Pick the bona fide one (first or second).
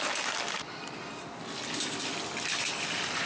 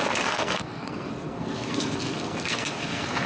first